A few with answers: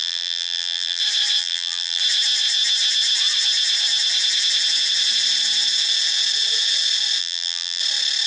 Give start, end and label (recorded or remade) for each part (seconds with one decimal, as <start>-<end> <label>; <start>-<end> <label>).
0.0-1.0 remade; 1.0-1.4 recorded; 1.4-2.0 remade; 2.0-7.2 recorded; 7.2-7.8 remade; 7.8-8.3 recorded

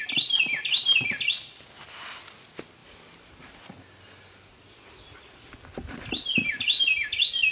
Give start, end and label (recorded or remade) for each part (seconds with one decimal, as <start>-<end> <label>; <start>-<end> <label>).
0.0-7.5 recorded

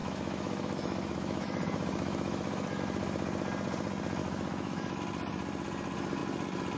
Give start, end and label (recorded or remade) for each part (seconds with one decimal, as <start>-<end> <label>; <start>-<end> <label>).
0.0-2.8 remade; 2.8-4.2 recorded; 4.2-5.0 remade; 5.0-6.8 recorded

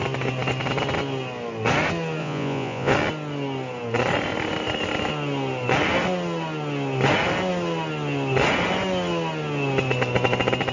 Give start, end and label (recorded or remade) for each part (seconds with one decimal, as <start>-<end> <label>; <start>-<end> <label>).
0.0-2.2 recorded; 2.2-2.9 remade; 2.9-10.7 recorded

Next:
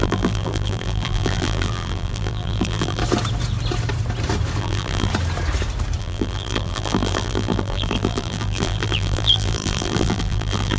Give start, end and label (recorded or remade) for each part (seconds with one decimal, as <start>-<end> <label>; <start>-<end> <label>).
0.0-3.0 remade; 3.0-4.6 recorded; 4.6-5.1 remade; 5.1-6.0 recorded; 6.0-10.8 remade

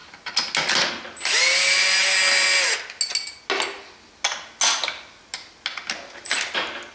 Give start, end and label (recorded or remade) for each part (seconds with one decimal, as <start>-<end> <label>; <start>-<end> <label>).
0.0-6.9 recorded

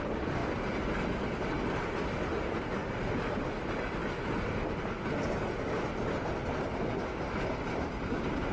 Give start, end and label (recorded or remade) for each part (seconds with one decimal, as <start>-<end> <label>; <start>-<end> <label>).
0.0-8.5 recorded